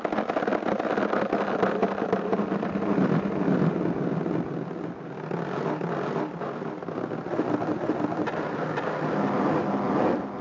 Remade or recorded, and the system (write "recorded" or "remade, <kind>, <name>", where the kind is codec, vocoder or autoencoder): recorded